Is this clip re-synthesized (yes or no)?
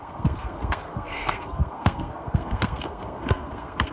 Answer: yes